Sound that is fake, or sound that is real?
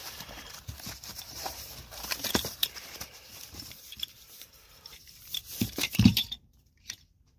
fake